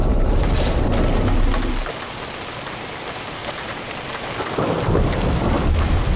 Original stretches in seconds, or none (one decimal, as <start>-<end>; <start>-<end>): 0.7-3.4; 4.6-6.2